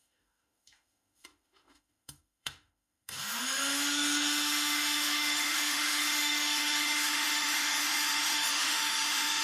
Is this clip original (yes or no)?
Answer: no